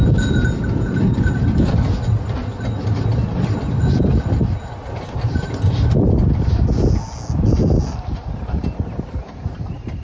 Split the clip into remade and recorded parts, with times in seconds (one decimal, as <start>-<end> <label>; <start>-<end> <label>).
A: 0.0-10.0 recorded